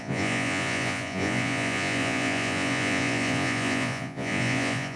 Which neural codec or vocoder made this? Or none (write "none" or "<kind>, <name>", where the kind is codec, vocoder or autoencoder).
vocoder, Vocos